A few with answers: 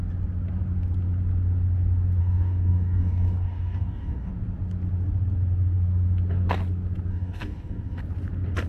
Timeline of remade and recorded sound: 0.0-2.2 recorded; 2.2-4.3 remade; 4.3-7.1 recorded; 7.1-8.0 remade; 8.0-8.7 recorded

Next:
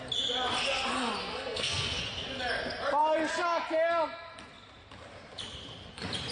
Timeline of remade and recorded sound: 0.0-1.2 recorded; 1.2-2.0 remade; 2.0-6.3 recorded

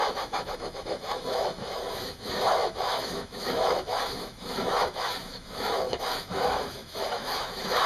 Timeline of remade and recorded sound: 0.0-7.9 remade